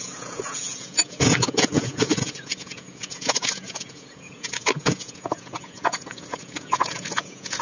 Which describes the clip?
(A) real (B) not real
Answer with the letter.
B